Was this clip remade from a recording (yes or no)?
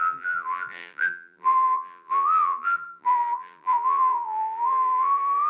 yes